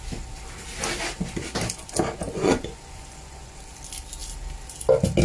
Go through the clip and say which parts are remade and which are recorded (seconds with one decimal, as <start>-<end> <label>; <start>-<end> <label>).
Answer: 0.0-2.4 recorded; 2.4-3.6 remade; 3.6-5.2 recorded